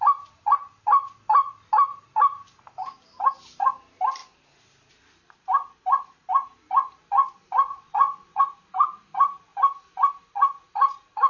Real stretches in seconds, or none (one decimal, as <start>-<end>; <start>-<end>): 0.0-7.7; 8.4-11.3